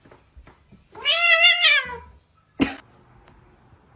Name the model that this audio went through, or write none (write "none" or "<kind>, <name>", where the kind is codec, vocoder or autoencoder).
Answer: none